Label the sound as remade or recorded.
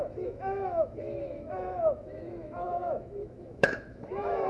remade